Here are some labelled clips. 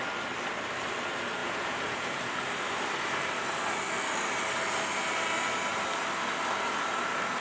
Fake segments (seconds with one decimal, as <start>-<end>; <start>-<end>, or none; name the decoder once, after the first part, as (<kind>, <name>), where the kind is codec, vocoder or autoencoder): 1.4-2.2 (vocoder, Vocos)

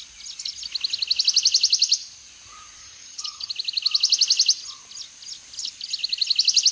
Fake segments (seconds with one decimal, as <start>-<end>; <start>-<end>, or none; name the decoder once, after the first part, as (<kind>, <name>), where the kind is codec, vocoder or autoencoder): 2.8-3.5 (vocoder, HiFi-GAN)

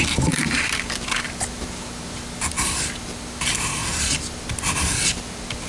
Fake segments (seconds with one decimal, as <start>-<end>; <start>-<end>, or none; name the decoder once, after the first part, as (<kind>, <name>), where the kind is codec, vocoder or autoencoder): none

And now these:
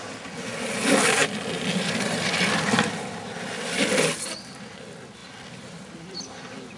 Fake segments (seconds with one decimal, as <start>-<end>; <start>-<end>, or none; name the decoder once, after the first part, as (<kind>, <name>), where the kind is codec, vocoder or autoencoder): 0.8-3.9 (vocoder, BigVGAN v2); 5.2-6.2

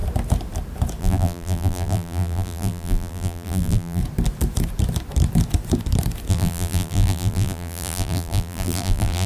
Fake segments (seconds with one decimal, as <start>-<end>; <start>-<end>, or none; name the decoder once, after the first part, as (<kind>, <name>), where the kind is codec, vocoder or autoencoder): 1.0-4.0 (vocoder, BigVGAN v2); 6.3-9.3

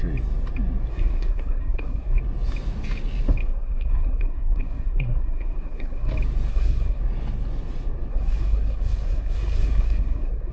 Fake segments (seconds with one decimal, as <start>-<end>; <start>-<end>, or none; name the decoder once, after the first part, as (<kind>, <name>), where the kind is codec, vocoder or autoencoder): 0.9-2.2 (codec, SNAC); 3.4-6.1; 6.5-7.0; 8.1-10.5

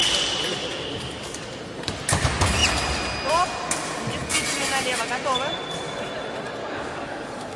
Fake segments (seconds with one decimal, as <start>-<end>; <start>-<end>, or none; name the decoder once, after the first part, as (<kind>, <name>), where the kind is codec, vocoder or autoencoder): 0.5-1.6 (codec, DAC); 6.6-7.6

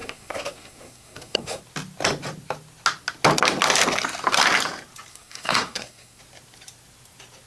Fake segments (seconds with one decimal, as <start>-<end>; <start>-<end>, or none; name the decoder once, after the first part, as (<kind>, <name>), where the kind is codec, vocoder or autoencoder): 0.0-1.6 (codec, SNAC); 5.1-6.2